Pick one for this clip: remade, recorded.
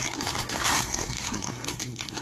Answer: remade